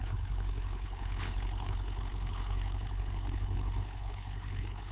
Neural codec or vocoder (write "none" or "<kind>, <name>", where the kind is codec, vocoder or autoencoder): codec, HILCodec